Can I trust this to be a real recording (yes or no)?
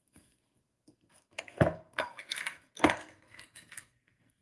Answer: no